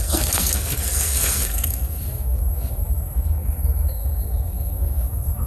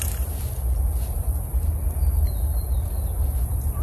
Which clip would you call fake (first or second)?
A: first